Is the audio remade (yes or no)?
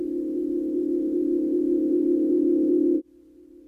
no